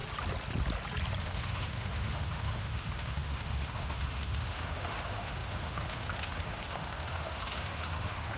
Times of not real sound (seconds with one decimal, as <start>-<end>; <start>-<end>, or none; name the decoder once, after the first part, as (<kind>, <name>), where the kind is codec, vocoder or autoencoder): 1.2-8.4 (autoencoder, DAC-VAE)